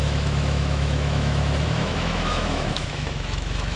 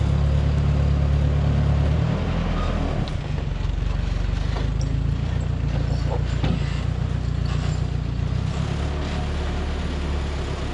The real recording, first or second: second